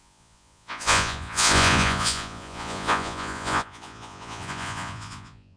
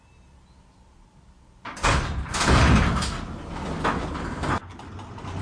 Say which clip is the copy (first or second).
first